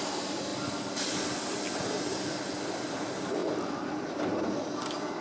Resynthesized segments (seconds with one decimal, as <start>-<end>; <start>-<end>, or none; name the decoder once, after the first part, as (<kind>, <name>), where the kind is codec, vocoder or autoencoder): none